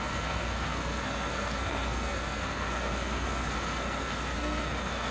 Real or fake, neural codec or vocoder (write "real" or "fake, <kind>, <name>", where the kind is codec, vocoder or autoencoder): fake, codec, SNAC